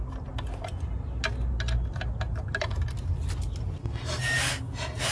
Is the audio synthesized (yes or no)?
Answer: no